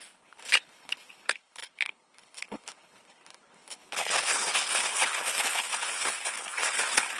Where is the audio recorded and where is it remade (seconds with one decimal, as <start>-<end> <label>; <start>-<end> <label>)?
0.0-7.2 remade